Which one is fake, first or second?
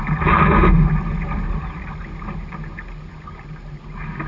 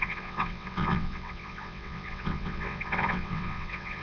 second